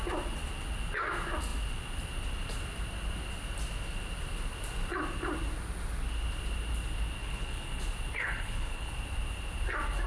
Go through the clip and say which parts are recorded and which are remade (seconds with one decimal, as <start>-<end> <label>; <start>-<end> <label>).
0.0-7.2 recorded; 7.2-7.8 remade; 7.8-8.2 recorded; 8.2-8.9 remade; 8.9-10.1 recorded